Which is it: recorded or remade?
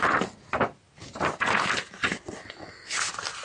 recorded